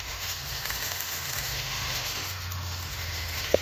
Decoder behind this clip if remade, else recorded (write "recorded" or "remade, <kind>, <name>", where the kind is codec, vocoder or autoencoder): remade, autoencoder, DAC-VAE